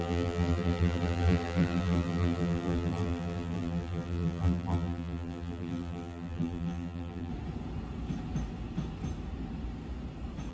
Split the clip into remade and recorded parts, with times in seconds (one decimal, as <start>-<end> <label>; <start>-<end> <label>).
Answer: 0.0-7.3 remade; 7.3-10.5 recorded